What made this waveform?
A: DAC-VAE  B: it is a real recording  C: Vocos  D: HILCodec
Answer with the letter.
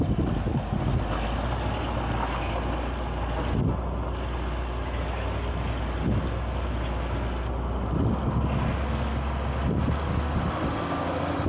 B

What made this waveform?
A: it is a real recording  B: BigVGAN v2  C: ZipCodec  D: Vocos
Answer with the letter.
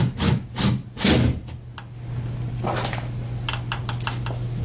A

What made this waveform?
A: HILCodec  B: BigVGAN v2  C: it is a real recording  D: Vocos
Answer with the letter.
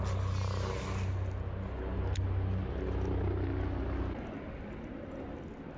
C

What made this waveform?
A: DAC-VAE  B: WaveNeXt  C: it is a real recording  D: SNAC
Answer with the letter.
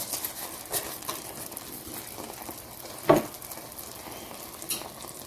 C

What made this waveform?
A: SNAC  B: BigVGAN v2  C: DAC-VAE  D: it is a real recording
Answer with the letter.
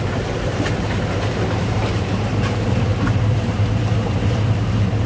B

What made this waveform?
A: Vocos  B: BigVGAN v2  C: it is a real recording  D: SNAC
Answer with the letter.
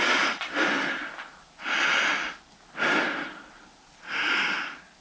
C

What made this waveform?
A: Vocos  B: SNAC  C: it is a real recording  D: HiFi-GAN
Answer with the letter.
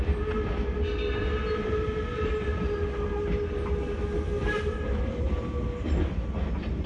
C